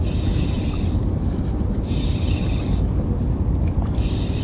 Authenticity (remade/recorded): remade